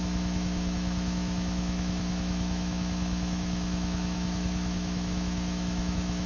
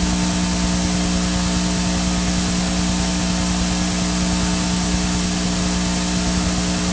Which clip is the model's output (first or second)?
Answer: first